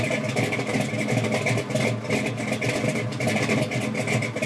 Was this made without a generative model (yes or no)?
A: yes